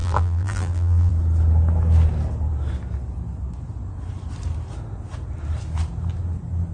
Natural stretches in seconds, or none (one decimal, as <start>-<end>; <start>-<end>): 1.1-6.7